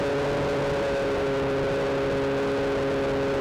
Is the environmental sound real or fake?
real